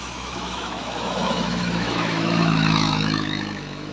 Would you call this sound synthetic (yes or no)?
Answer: yes